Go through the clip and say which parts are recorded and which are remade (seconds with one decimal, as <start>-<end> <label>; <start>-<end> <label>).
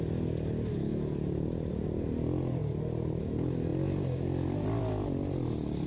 0.0-5.9 recorded